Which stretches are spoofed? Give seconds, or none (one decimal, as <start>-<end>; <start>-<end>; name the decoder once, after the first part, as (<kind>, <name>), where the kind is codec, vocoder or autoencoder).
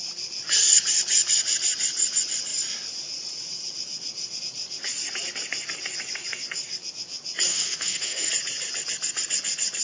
7.5-8.3 (autoencoder, DAC-VAE)